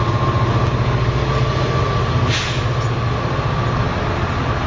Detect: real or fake real